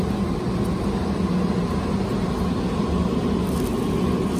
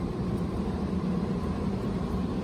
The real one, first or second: first